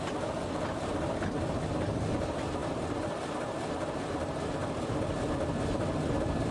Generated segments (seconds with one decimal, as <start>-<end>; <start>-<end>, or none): none